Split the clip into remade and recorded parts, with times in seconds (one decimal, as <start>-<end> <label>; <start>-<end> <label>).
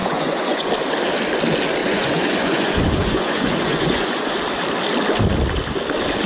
0.0-0.7 remade; 0.7-1.8 recorded; 1.8-4.3 remade; 4.3-6.3 recorded